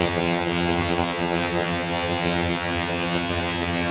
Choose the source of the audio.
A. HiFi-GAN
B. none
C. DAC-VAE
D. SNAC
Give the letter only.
A